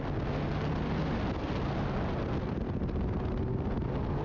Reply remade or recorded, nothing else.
recorded